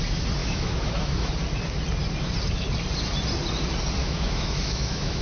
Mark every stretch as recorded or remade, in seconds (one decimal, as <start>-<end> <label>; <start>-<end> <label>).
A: 0.0-0.4 recorded; 0.4-1.3 remade; 1.3-4.0 recorded; 4.0-5.2 remade